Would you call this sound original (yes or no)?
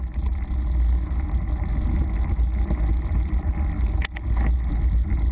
yes